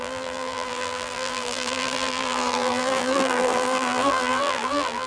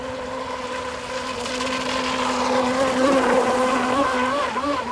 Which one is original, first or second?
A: second